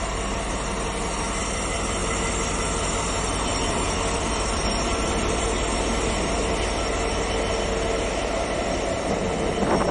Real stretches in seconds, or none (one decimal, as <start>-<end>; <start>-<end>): 0.0-2.0; 6.5-8.2; 9.2-9.9